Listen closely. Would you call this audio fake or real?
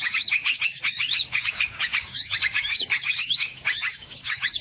fake